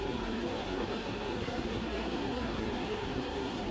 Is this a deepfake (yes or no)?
yes